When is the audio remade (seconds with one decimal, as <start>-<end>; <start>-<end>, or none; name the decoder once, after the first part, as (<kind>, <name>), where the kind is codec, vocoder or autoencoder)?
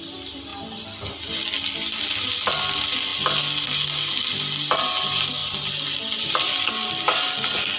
0.5-1.0 (vocoder, BigVGAN v2); 5.4-6.7